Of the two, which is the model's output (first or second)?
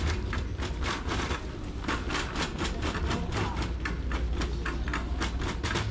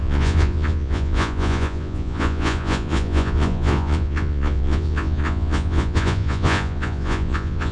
second